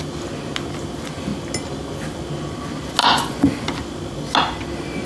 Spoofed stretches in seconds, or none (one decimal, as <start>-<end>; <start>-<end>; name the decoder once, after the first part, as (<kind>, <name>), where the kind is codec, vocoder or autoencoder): 3.0-3.7 (vocoder, Vocos)